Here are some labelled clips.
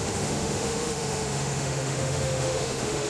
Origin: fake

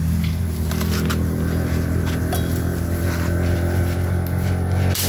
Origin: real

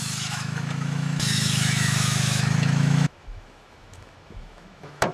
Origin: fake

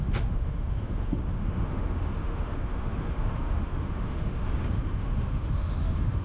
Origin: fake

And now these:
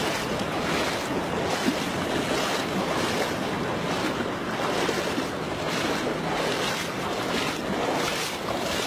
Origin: real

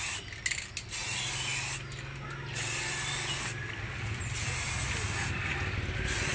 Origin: real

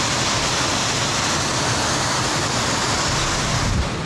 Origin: real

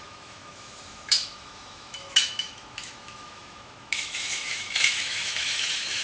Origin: fake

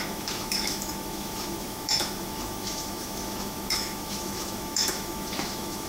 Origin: fake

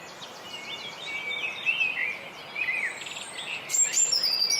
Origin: real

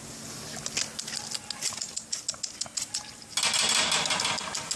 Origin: real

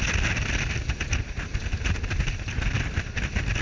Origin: real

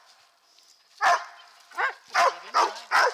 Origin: real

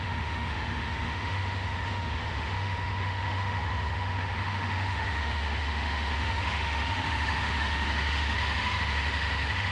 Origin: fake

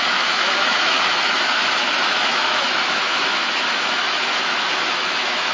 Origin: fake